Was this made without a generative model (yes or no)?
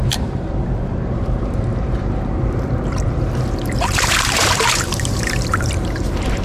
no